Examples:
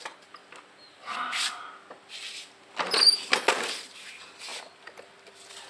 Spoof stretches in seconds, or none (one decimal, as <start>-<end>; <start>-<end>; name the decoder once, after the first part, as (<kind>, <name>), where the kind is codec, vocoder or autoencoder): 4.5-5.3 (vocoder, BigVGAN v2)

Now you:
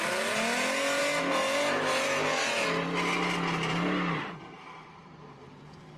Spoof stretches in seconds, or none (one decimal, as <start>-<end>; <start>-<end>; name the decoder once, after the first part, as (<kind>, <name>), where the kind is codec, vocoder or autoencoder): none

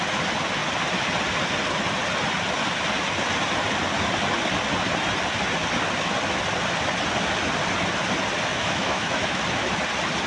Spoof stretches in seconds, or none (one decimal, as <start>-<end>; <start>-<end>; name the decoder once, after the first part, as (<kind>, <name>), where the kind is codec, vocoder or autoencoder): 8.5-9.4 (autoencoder, DAC-VAE)

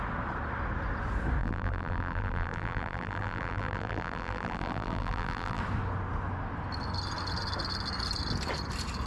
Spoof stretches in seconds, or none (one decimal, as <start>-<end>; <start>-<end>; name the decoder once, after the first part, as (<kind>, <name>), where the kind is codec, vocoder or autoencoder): 1.4-5.6 (vocoder, BigVGAN v2)

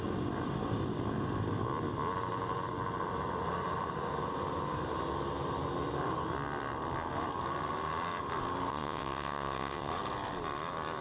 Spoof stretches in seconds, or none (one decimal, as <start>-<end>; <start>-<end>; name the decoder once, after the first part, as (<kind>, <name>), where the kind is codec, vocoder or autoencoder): 8.7-9.9 (vocoder, WaveNeXt)